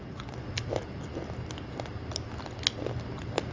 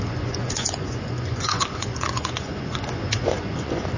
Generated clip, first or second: second